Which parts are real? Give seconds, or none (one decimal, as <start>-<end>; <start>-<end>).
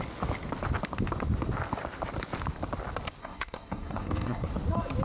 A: 0.0-3.2; 4.5-5.0